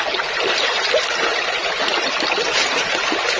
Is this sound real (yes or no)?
yes